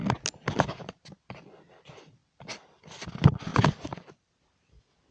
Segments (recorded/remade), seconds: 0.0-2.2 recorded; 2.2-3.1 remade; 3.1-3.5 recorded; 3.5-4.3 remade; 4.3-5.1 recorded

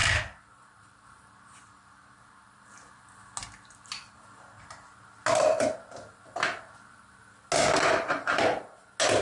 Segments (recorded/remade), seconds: 0.0-9.2 recorded

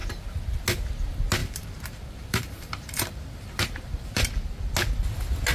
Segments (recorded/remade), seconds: 0.0-0.5 remade; 0.5-1.4 recorded; 1.4-4.7 remade; 4.7-5.5 recorded

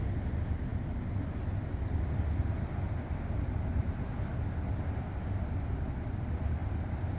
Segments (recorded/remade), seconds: 0.0-3.0 recorded; 3.0-3.9 remade; 3.9-6.6 recorded; 6.6-7.2 remade